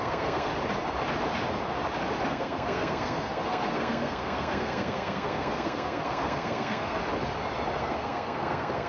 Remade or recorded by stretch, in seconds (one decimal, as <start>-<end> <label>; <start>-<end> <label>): 0.0-0.5 remade; 0.5-2.3 recorded; 2.3-7.0 remade; 7.0-7.8 recorded; 7.8-8.9 remade